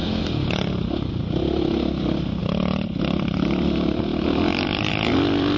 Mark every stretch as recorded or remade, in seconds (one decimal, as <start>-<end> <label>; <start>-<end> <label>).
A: 0.0-5.6 recorded